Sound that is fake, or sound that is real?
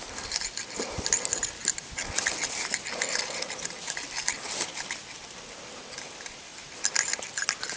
real